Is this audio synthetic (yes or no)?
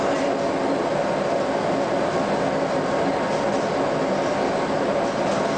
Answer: no